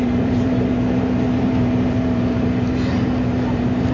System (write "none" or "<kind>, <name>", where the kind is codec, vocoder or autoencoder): vocoder, BigVGAN v2